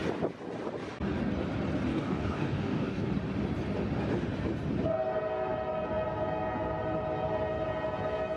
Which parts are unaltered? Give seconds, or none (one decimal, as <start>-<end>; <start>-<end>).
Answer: 0.0-1.9; 3.1-8.4